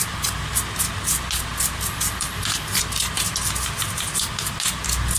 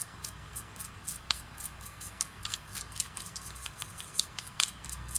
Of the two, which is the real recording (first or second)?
first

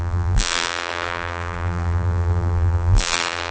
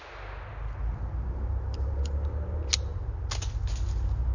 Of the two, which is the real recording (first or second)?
second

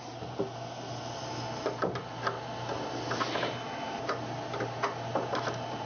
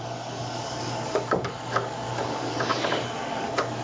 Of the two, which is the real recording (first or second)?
first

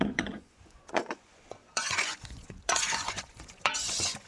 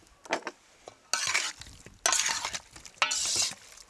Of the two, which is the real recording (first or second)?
second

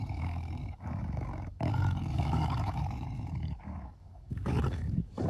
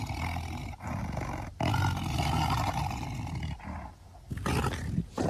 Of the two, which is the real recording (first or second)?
second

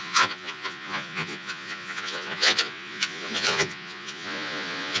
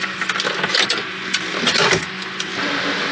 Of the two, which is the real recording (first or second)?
second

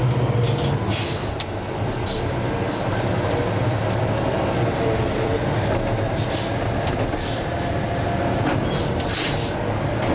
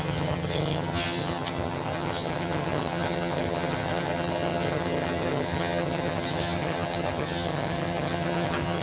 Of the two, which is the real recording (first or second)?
first